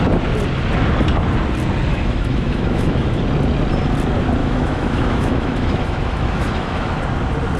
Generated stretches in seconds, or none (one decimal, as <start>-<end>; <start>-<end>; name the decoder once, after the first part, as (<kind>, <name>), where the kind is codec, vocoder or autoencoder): 1.9-3.2 (autoencoder, DAC-VAE); 4.4-7.0